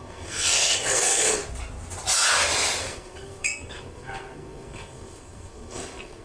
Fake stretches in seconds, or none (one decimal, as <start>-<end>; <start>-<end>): 0.0-1.4; 2.8-6.2